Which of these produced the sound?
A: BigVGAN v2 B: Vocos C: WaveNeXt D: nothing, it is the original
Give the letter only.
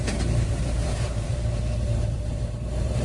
A